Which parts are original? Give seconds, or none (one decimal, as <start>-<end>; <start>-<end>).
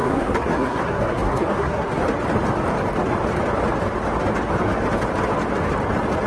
2.0-6.3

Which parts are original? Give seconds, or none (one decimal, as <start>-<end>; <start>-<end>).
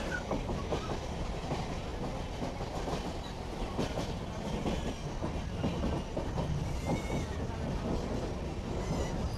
0.0-9.4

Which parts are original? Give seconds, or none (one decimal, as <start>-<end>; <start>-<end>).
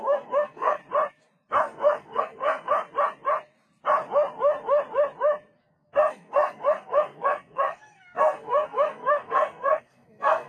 0.8-1.6; 2.7-5.6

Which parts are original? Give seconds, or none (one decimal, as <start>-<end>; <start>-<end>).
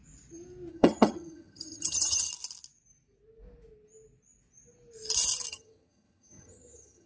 0.0-0.7; 2.3-5.5